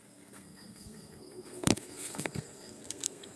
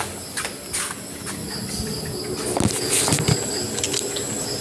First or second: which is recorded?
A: second